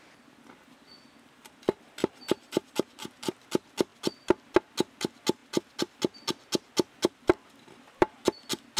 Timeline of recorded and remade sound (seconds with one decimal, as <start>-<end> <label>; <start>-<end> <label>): 0.0-2.0 recorded; 2.0-2.7 remade; 2.7-8.8 recorded

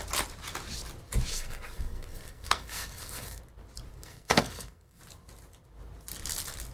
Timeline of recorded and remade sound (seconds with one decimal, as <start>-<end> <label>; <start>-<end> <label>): 0.0-1.3 recorded; 1.3-3.4 remade; 3.4-3.9 recorded; 3.9-5.0 remade; 5.0-6.7 recorded

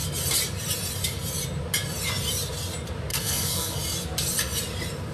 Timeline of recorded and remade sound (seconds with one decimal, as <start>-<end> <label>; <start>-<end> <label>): 0.0-3.1 recorded; 3.1-3.8 remade; 3.8-5.1 recorded

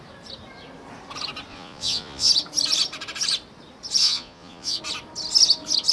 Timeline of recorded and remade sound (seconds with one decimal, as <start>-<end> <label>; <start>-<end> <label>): 0.0-1.5 recorded; 1.5-2.3 remade; 2.3-4.0 recorded; 4.0-4.8 remade; 4.8-5.9 recorded

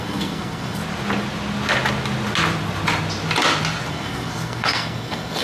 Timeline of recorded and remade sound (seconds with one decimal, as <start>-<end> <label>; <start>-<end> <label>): 0.0-0.8 remade; 0.8-3.9 recorded; 3.9-5.4 remade

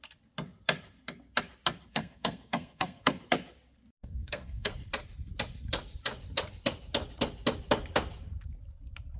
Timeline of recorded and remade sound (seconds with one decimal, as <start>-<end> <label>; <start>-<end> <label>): 0.0-1.9 recorded; 1.9-3.2 remade; 3.2-4.0 recorded; 4.0-4.7 remade; 4.7-9.2 recorded